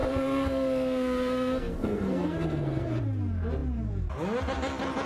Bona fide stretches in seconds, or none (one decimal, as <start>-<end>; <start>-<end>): 3.0-5.1